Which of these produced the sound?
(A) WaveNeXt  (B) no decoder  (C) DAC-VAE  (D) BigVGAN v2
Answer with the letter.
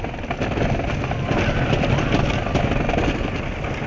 B